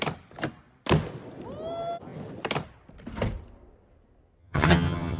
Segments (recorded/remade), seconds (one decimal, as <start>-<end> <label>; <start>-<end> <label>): 0.0-4.4 recorded; 4.4-5.2 remade